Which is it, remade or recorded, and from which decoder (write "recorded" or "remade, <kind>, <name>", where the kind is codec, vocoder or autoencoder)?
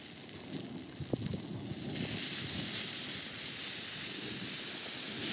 recorded